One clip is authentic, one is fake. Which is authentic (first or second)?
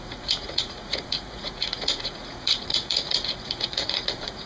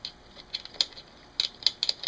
second